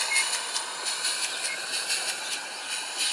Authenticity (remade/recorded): recorded